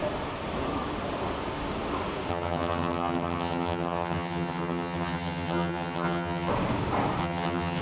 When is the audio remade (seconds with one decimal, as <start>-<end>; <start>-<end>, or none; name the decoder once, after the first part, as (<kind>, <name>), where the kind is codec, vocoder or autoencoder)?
2.3-6.5 (vocoder, HiFi-GAN); 7.2-7.8